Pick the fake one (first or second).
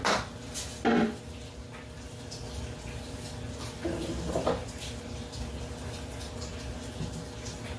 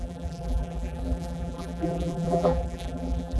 second